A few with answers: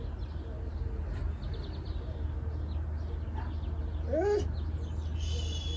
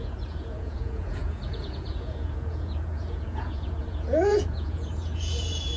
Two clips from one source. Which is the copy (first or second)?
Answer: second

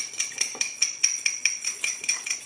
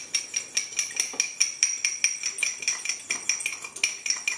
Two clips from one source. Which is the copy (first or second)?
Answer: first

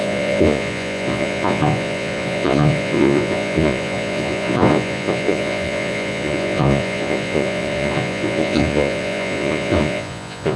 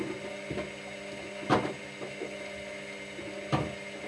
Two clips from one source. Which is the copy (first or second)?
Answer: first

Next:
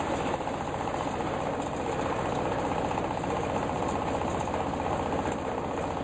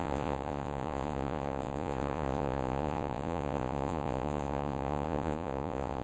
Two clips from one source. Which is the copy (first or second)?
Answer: second